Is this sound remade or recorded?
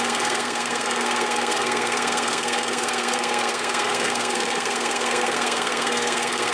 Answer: remade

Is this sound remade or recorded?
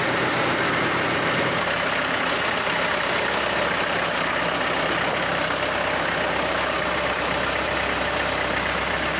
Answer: recorded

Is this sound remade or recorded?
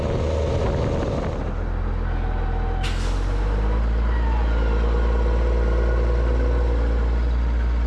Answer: recorded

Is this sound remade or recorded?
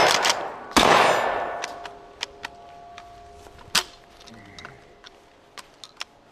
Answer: recorded